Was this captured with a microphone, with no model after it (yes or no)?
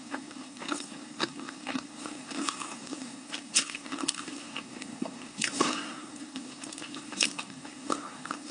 no